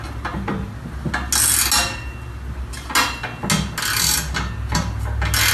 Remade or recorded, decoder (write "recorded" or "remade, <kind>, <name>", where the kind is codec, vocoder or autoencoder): recorded